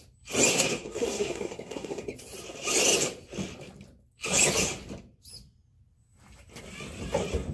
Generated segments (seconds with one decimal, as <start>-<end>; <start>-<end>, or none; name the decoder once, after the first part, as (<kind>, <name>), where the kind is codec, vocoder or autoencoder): 0.5-2.2 (codec, SNAC)